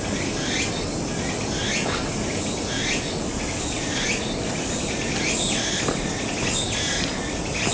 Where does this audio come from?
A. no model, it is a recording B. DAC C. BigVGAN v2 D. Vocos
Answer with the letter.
A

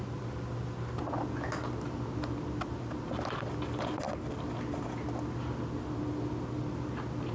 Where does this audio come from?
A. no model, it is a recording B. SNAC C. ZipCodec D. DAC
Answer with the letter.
A